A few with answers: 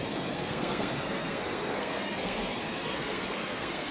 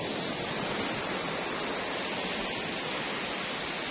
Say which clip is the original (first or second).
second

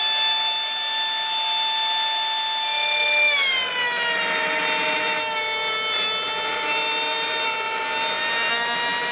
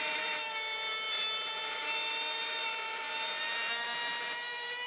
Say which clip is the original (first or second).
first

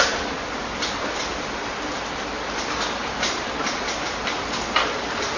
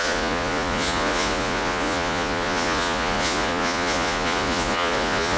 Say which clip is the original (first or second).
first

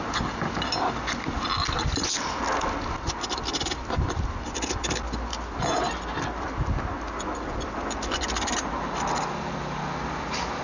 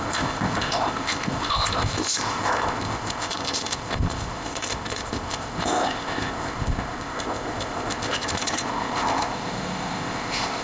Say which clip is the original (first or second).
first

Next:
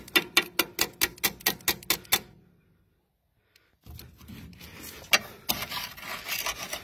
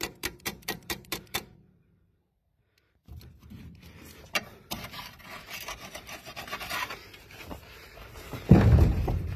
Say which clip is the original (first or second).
first